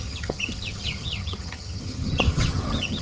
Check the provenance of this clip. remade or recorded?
remade